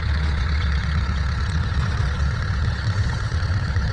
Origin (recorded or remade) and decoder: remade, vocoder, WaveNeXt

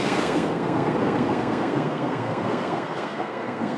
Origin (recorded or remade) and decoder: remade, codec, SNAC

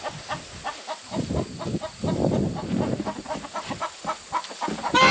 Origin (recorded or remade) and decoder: recorded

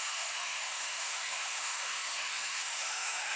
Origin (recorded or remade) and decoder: remade, autoencoder, DAC-VAE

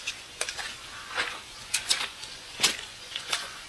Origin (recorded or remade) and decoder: remade, vocoder, Vocos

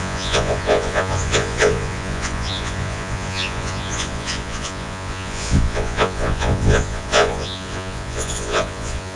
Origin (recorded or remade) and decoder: remade, vocoder, Vocos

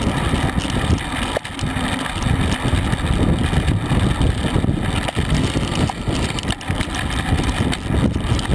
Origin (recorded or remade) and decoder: recorded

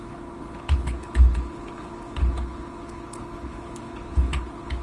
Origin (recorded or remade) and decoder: remade, codec, HILCodec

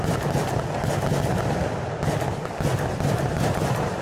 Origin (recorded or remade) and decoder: recorded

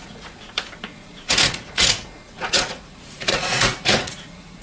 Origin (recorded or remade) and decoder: remade, vocoder, Vocos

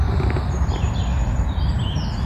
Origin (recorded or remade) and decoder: recorded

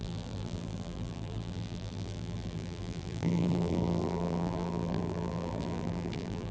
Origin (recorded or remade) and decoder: remade, vocoder, BigVGAN v2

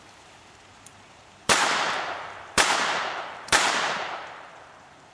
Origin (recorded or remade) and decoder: remade, vocoder, BigVGAN v2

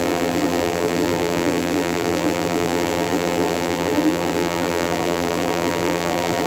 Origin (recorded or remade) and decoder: remade, vocoder, BigVGAN v2